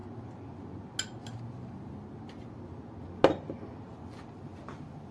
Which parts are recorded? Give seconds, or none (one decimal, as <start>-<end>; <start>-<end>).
0.0-5.1